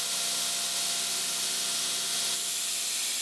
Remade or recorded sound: recorded